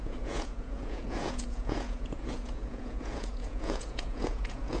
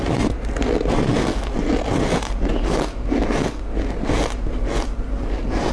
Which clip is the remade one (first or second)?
first